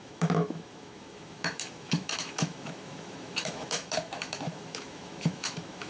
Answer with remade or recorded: remade